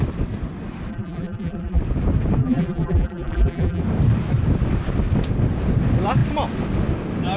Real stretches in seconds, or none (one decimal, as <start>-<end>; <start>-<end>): 0.0-0.9; 1.8-2.4; 3.8-7.4